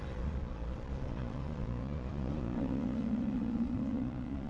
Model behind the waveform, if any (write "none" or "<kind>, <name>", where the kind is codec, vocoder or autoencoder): vocoder, Vocos